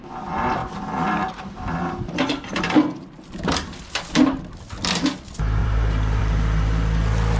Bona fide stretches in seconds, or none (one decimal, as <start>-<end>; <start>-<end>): 0.0-5.6; 6.2-7.4